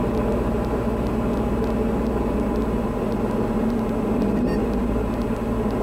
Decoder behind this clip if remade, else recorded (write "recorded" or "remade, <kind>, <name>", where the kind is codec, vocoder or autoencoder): recorded